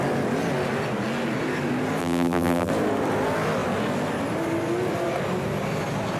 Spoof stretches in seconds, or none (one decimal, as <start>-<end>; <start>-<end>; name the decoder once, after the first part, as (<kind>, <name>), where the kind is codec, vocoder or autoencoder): 2.0-2.7 (vocoder, BigVGAN v2)